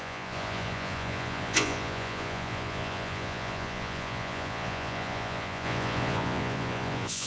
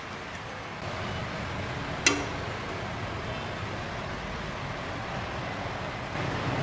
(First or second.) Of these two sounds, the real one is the second